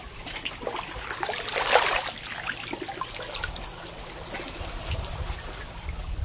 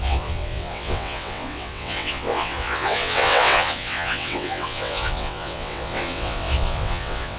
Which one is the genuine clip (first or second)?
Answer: first